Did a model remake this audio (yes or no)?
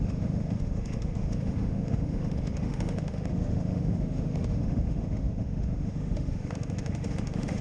yes